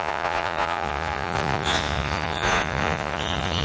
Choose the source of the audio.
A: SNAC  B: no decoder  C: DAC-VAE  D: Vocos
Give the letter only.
D